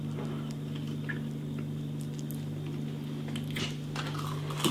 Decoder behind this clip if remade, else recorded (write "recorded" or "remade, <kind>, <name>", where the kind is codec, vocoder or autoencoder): recorded